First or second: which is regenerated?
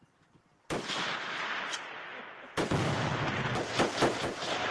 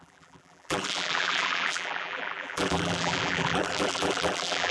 second